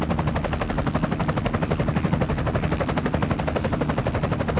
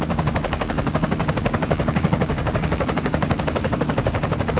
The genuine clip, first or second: first